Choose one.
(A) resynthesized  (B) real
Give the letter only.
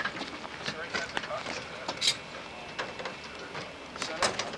B